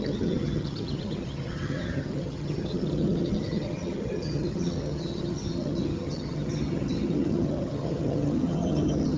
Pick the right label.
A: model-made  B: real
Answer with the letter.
A